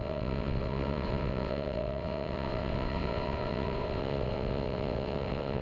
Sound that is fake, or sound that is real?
fake